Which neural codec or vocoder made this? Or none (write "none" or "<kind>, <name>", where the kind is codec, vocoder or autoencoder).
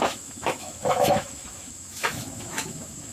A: autoencoder, DAC-VAE